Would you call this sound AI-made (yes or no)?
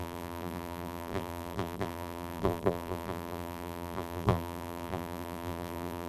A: yes